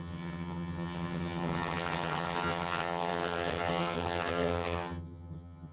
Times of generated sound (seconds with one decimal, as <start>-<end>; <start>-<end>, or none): 0.0-5.7